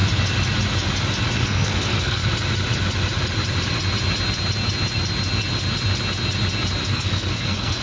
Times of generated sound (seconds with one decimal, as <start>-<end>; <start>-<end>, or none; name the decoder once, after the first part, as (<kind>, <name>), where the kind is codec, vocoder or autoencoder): 1.4-2.2 (codec, SNAC); 6.9-7.8